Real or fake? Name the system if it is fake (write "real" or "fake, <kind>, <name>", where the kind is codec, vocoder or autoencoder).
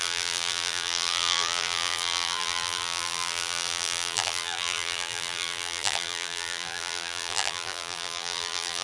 fake, vocoder, BigVGAN v2